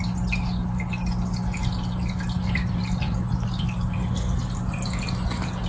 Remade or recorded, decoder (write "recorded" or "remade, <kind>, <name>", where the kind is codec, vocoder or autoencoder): recorded